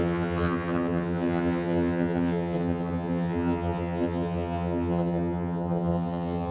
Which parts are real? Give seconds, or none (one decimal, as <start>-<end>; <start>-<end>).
none

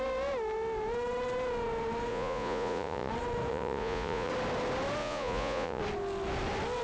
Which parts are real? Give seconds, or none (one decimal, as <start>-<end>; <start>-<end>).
0.0-2.1; 3.1-3.5; 4.3-5.0; 5.8-6.8

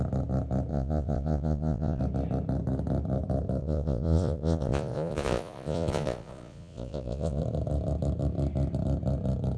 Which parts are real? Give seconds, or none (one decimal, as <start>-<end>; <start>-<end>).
0.0-0.7; 2.0-3.6; 7.4-9.6

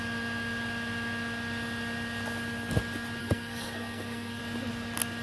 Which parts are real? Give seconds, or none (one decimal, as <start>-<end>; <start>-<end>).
0.0-3.2; 4.4-5.2

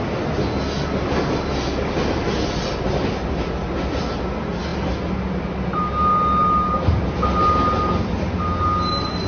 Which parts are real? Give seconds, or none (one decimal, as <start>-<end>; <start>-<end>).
0.0-9.3

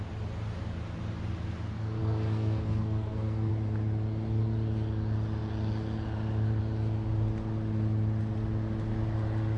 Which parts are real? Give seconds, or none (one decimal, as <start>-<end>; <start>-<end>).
0.0-2.0; 3.5-9.6

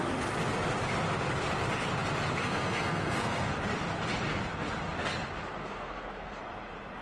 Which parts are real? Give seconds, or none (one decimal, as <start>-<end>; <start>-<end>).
0.0-2.4; 3.5-5.6; 6.4-7.0

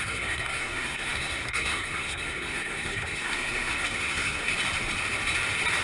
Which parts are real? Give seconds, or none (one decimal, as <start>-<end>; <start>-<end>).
4.5-5.8